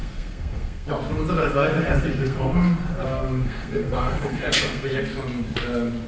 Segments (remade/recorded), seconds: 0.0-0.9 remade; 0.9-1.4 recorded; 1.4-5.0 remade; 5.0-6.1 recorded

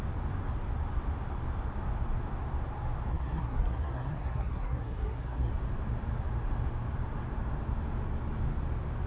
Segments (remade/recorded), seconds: 0.0-3.1 recorded; 3.1-5.5 remade; 5.5-9.1 recorded

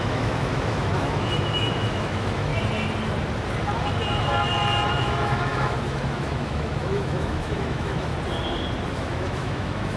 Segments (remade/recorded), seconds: 0.0-2.5 remade; 2.5-4.9 recorded; 4.9-8.1 remade; 8.1-8.9 recorded; 8.9-10.0 remade

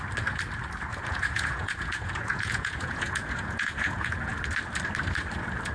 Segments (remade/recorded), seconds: 0.0-0.9 recorded; 0.9-4.3 remade; 4.3-5.7 recorded